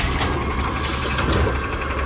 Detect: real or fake real